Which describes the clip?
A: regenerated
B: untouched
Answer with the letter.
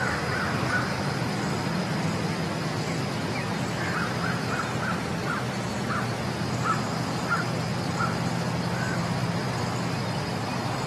B